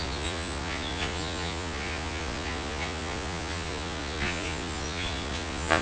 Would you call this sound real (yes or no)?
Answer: no